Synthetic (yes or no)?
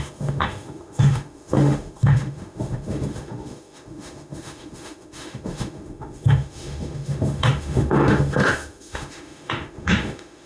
yes